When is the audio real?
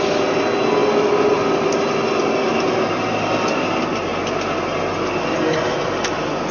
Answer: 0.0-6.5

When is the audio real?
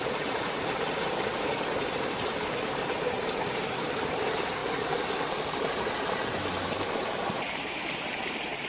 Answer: 4.6-6.1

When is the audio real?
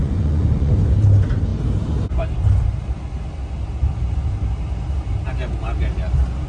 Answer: 0.7-6.5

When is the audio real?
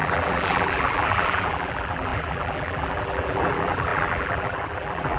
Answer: none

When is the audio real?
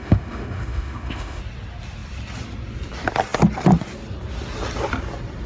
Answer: 1.4-5.5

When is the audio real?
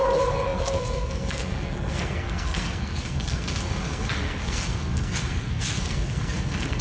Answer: none